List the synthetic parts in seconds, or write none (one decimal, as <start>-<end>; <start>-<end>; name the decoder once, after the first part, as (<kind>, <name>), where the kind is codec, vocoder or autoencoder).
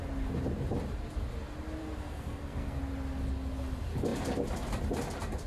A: 1.8-2.8 (codec, SNAC)